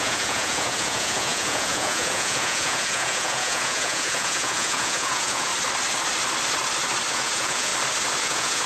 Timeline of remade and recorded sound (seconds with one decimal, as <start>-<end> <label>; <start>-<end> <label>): 0.0-5.5 remade; 5.5-7.1 recorded; 7.1-7.7 remade; 7.7-8.2 recorded; 8.2-8.7 remade